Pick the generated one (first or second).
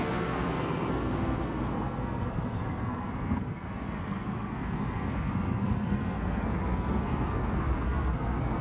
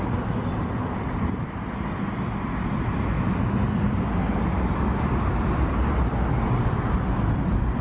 first